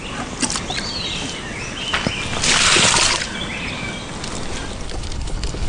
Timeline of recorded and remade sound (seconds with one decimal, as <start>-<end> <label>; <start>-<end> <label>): 0.0-5.0 recorded; 5.0-5.7 remade